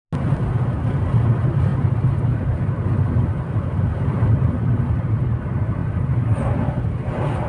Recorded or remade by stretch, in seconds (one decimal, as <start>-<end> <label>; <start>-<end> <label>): 0.0-7.5 recorded